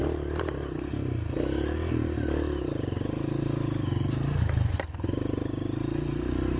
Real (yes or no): yes